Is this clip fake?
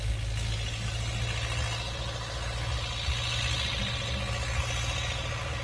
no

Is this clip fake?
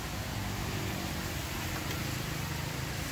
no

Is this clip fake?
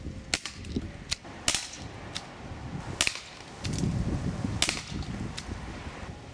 no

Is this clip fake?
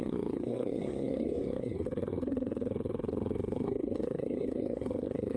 yes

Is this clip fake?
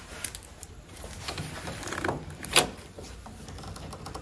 no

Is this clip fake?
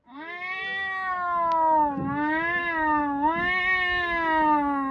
no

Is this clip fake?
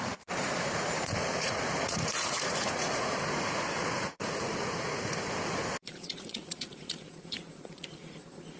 yes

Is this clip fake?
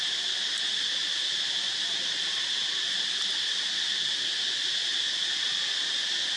no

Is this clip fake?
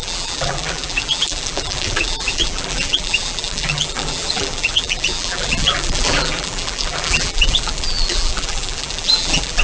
yes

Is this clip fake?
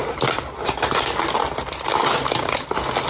no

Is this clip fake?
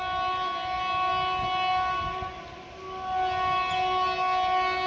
no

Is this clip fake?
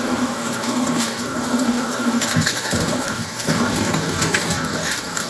yes